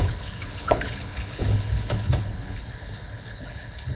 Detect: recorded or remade remade